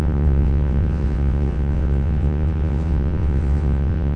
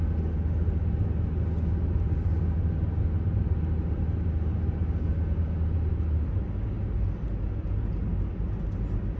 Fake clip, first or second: first